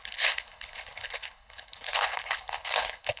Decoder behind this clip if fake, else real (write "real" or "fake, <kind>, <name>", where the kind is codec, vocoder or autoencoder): fake, codec, HILCodec